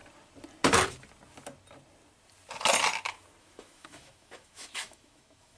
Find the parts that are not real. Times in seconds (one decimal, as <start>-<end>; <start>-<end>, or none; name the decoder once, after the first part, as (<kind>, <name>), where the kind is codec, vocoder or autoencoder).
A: 3.4-5.6 (autoencoder, DAC-VAE)